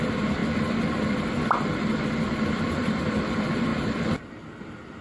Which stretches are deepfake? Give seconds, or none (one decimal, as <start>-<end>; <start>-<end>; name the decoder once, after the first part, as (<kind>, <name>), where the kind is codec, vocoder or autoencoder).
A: none